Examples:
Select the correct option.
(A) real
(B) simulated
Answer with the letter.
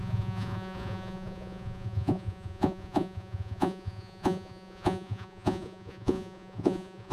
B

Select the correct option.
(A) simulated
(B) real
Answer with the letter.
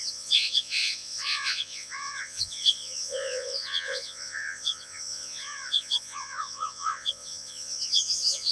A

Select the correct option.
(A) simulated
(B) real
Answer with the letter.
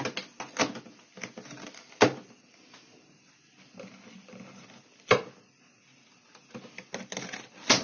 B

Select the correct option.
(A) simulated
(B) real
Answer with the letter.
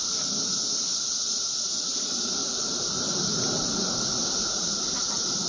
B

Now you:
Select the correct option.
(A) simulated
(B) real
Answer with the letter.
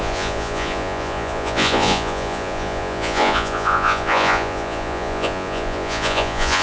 A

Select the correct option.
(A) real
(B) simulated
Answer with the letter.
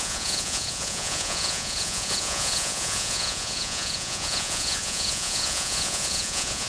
B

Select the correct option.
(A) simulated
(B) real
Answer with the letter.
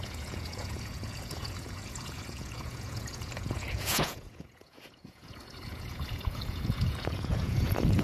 A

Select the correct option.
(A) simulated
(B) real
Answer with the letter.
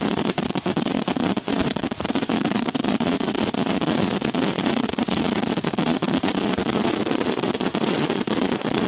A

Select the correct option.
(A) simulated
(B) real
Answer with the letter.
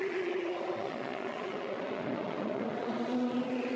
A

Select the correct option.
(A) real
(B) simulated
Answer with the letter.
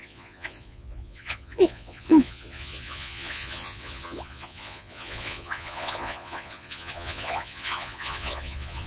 B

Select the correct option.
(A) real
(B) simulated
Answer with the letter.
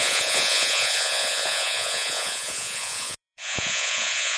B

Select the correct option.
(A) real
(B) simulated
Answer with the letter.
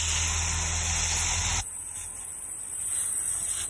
A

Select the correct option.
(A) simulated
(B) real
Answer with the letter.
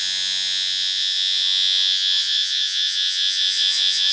A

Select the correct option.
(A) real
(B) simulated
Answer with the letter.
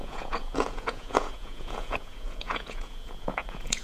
B